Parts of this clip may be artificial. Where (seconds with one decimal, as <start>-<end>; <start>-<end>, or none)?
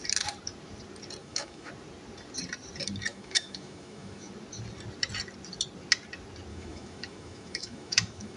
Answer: 1.2-1.7; 3.1-4.3; 6.5-8.4